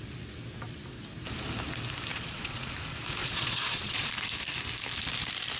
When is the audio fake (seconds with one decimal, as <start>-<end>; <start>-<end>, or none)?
2.1-2.7; 3.2-4.1